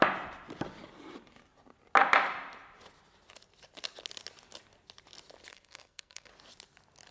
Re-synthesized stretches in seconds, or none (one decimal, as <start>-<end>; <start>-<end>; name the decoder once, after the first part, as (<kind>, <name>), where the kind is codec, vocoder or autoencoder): 5.5-6.3 (codec, SNAC)